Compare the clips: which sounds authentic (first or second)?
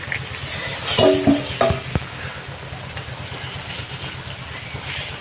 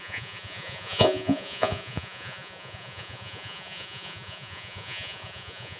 first